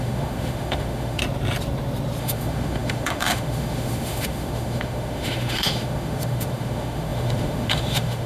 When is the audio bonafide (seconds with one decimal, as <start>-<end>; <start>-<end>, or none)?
1.2-2.2